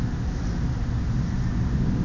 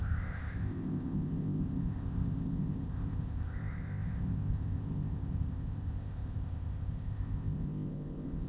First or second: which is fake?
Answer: second